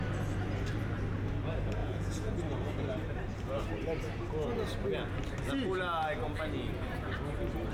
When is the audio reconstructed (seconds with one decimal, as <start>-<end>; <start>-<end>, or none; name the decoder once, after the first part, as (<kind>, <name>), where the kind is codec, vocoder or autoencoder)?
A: 1.8-2.3 (vocoder, Vocos)